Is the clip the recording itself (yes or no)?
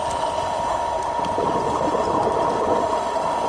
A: yes